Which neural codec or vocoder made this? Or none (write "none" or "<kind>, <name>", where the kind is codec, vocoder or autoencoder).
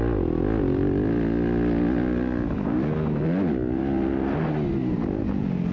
none